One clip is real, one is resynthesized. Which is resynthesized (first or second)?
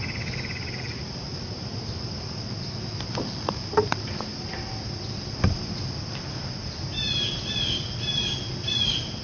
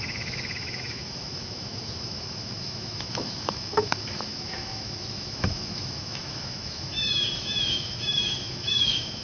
second